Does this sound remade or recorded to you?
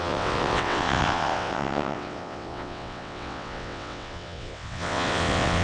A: remade